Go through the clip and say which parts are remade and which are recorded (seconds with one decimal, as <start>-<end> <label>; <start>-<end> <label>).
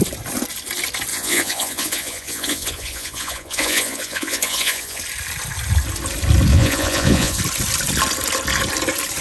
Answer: 0.0-1.1 recorded; 1.1-5.0 remade; 5.0-6.5 recorded; 6.5-7.4 remade; 7.4-9.2 recorded